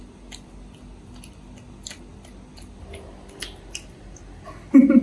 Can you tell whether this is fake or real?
real